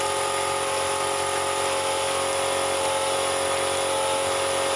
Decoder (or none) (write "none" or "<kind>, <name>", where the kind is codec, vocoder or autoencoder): none